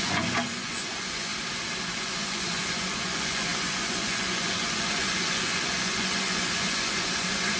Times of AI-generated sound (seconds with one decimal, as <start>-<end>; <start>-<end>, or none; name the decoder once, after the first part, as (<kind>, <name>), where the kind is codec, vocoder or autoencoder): 0.0-1.3 (vocoder, Vocos); 2.0-7.6